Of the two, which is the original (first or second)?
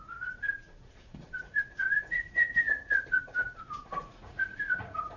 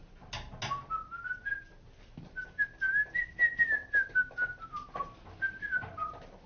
second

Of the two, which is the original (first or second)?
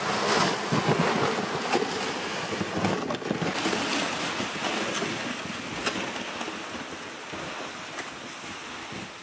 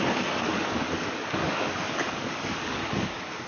first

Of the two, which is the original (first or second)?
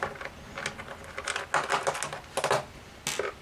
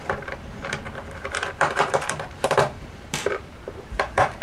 first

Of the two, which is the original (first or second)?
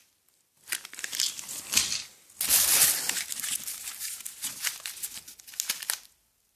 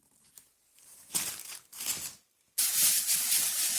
first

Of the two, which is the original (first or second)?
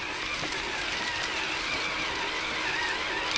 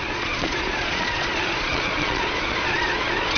first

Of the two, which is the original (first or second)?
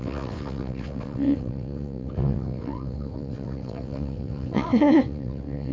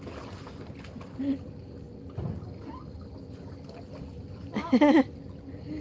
second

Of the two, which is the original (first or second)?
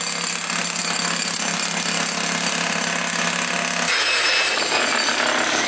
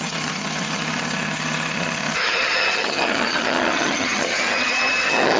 first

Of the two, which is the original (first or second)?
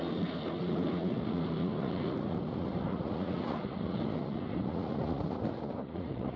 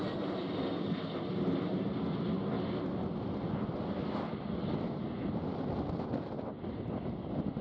second